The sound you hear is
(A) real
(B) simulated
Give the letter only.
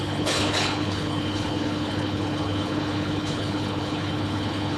B